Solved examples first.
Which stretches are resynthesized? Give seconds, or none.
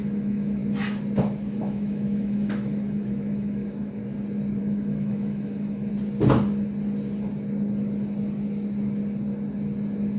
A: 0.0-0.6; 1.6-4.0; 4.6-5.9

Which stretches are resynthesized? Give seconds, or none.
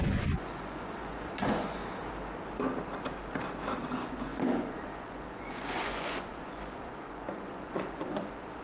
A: 0.0-1.8; 3.8-8.6